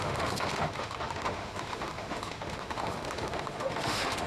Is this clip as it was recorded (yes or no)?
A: no